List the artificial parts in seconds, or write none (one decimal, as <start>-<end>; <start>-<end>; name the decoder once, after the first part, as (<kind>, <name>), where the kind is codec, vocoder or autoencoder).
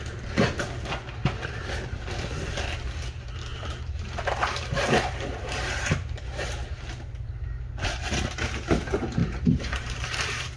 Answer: 3.5-6.9 (vocoder, BigVGAN v2); 9.2-10.6